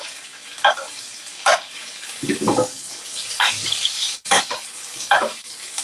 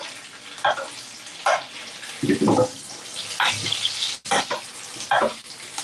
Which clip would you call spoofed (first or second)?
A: first